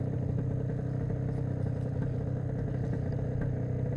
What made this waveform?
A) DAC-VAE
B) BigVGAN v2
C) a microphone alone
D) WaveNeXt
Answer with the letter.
C